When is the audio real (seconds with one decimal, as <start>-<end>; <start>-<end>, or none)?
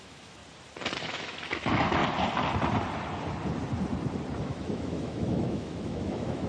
0.4-1.0; 2.0-4.4